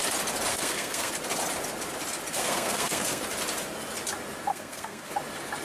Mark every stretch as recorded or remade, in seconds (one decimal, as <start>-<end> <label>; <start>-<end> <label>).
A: 0.0-0.5 recorded; 0.5-1.1 remade; 1.1-2.4 recorded; 2.4-3.2 remade; 3.2-4.5 recorded; 4.5-5.1 remade; 5.1-5.6 recorded